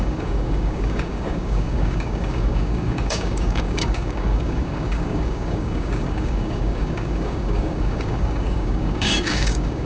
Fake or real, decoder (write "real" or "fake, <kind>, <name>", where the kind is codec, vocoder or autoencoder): fake, codec, DAC